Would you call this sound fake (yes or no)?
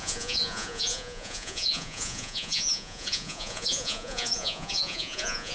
yes